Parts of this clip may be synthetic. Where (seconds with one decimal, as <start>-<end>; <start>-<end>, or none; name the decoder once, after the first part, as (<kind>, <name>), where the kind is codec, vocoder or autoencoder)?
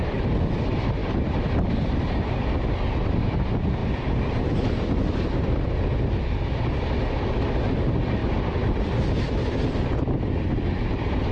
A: 1.0-1.7 (vocoder, BigVGAN v2); 8.2-9.5